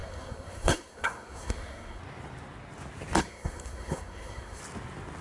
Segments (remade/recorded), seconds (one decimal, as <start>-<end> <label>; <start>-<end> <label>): 0.0-2.0 remade; 2.0-3.2 recorded; 3.2-4.6 remade; 4.6-5.2 recorded